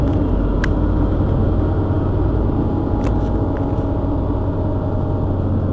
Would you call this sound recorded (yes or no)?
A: yes